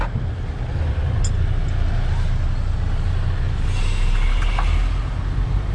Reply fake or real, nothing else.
real